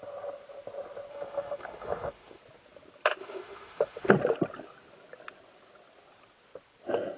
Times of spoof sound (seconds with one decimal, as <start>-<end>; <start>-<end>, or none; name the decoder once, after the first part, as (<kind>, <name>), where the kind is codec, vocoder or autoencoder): 1.1-2.4 (autoencoder, DAC-VAE); 3.2-4.1